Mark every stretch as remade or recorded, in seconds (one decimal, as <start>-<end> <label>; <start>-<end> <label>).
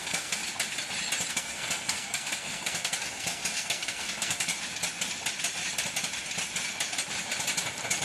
0.0-0.4 remade; 0.4-1.3 recorded; 1.3-4.5 remade; 4.5-8.0 recorded